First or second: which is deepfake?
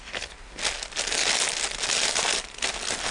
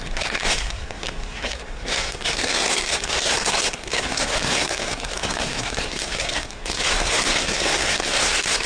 second